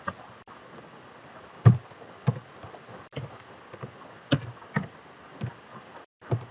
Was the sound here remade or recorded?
recorded